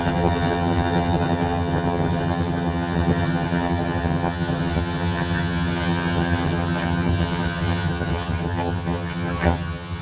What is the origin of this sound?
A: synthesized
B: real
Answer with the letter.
A